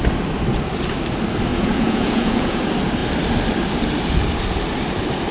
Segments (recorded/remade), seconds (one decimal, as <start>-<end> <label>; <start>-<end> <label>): 0.0-1.5 recorded; 1.5-2.6 remade; 2.6-5.3 recorded